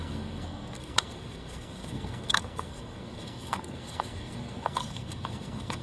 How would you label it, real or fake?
fake